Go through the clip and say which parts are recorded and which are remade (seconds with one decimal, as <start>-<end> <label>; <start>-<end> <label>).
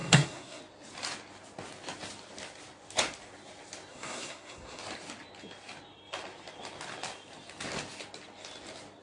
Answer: 0.0-0.6 remade; 0.6-3.9 recorded; 3.9-4.8 remade; 4.8-9.0 recorded